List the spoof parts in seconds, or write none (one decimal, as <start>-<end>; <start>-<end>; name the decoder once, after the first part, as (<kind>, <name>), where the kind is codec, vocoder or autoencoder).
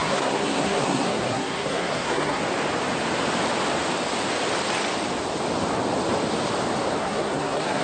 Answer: 0.0-2.4 (codec, SNAC); 7.0-7.8